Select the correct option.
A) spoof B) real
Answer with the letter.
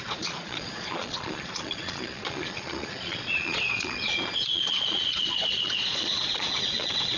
A